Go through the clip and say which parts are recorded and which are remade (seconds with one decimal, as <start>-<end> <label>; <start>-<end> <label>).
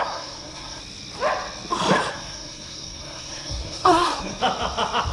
0.0-0.8 remade; 0.8-2.1 recorded; 2.1-4.4 remade; 4.4-5.1 recorded